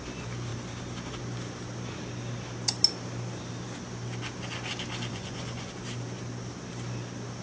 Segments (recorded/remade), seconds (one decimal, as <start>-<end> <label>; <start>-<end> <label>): 0.0-5.1 recorded; 5.1-5.7 remade; 5.7-7.4 recorded